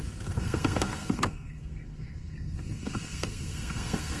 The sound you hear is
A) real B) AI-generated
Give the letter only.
B